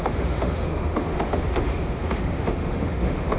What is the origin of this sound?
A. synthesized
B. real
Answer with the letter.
A